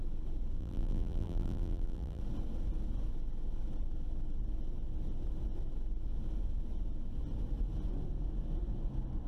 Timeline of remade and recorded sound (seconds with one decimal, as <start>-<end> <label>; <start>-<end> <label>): 0.0-0.6 recorded; 0.6-2.2 remade; 2.2-9.3 recorded